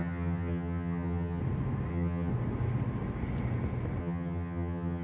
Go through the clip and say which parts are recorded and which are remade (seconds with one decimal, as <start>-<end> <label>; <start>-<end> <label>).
0.0-1.4 remade; 1.4-1.9 recorded; 1.9-2.3 remade; 2.3-4.0 recorded; 4.0-5.0 remade